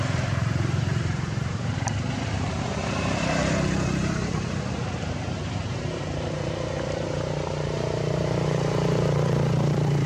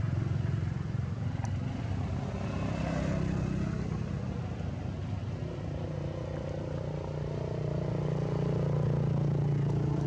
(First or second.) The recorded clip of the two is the second